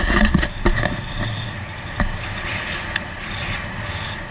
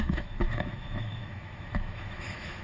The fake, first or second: second